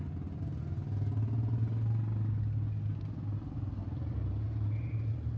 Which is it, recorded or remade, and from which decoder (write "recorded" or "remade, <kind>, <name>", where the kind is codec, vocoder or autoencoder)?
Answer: recorded